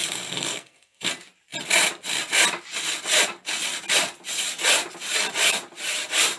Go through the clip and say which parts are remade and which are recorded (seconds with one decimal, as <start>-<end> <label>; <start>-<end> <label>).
0.0-1.1 remade; 1.1-6.4 recorded